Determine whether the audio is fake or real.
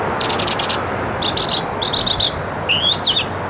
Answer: real